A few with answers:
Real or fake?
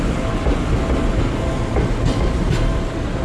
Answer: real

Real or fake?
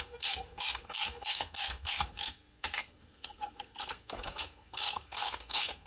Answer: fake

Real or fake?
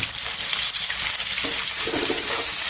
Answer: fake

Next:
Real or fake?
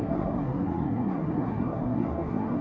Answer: fake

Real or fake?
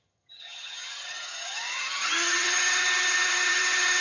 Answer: fake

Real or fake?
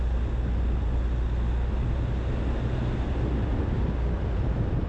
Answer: real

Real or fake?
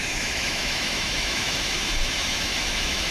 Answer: fake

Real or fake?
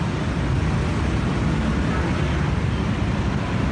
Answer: real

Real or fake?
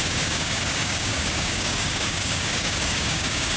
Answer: fake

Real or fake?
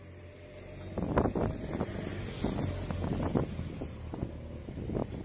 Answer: real